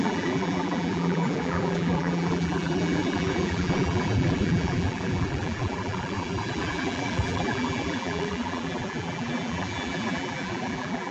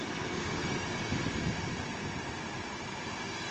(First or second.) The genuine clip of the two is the second